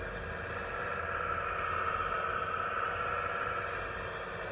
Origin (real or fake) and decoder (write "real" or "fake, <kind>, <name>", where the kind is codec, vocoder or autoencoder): real